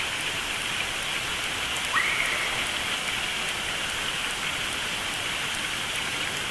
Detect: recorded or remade recorded